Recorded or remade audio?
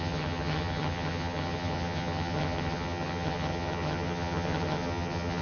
remade